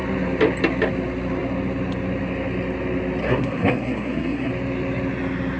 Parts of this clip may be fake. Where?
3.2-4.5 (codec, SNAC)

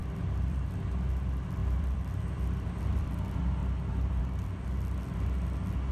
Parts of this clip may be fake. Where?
0.0-0.7 (vocoder, BigVGAN v2); 1.6-3.1; 3.6-4.2

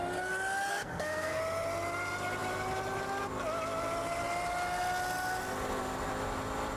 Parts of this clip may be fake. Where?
0.7-1.4 (codec, SNAC)